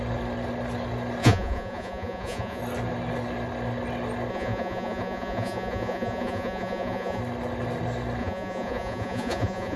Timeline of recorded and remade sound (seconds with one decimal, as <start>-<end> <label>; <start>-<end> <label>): 0.0-1.2 recorded; 1.2-2.6 remade; 2.6-4.3 recorded; 4.3-7.2 remade; 7.2-8.2 recorded; 8.2-9.8 remade